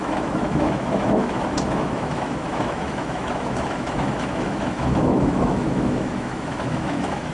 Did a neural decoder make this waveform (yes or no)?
yes